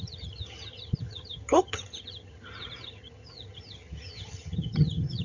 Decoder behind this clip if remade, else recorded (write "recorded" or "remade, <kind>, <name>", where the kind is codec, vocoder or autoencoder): remade, vocoder, HiFi-GAN